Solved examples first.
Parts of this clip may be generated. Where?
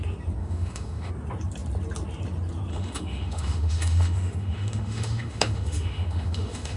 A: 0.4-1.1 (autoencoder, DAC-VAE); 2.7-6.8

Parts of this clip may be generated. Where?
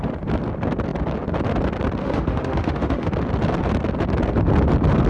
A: 2.0-3.1 (autoencoder, DAC-VAE)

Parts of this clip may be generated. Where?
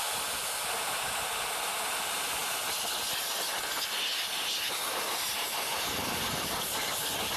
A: none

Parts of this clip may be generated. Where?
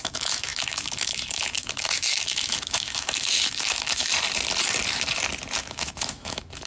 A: 0.0-4.1 (autoencoder, DAC-VAE); 5.6-6.7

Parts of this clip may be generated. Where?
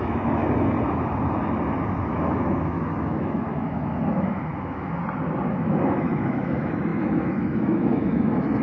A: 0.0-0.4 (autoencoder, DAC-VAE); 2.0-5.0; 5.5-8.6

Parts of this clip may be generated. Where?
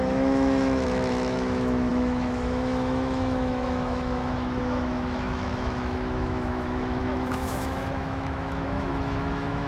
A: 0.0-9.7 (autoencoder, DAC-VAE)